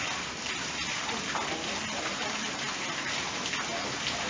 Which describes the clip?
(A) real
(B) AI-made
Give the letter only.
A